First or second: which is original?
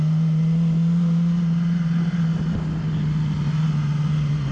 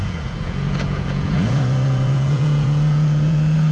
first